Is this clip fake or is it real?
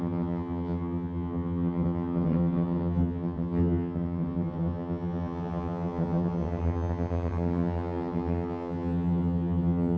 fake